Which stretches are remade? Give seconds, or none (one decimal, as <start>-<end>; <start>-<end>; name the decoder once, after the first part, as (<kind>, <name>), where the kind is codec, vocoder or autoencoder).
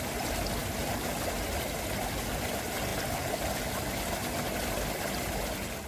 none